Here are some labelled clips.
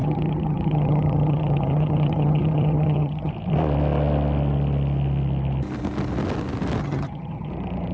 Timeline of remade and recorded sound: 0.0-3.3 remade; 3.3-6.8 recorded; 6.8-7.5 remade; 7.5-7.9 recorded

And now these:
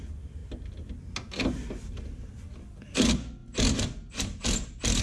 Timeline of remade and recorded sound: 0.0-5.0 recorded